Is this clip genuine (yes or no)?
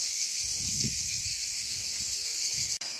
no